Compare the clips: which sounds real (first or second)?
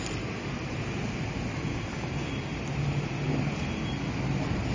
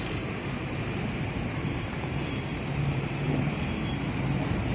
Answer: first